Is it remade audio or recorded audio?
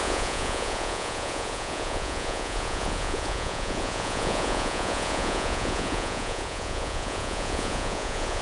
remade